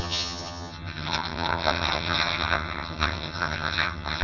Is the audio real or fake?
fake